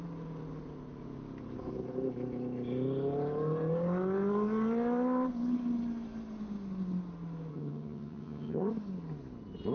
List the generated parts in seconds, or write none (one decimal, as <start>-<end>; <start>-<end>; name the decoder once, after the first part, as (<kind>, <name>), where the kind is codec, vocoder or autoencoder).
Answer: 7.5-8.7 (vocoder, HiFi-GAN)